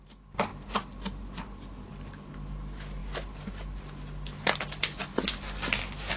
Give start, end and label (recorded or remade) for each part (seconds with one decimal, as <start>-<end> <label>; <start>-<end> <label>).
0.0-6.2 recorded